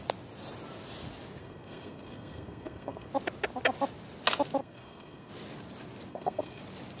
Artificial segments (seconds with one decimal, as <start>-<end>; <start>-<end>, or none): 1.4-3.1; 4.6-5.3; 6.1-6.6